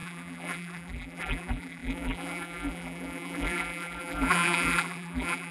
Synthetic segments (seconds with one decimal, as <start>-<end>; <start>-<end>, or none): 0.0-5.5

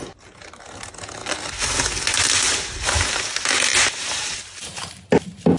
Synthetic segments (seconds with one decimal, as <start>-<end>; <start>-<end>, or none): 3.7-4.9

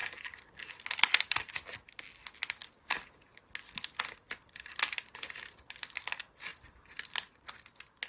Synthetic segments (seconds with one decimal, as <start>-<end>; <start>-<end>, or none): 0.0-1.4